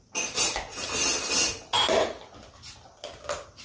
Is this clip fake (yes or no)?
no